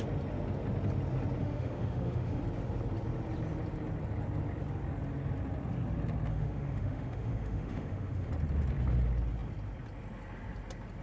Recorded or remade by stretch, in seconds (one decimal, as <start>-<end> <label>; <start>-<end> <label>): 0.0-1.4 recorded; 1.4-2.4 remade; 2.4-6.3 recorded; 6.3-8.3 remade; 8.3-11.0 recorded